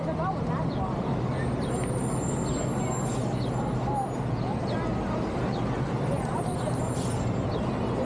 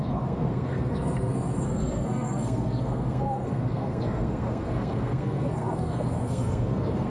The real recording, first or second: first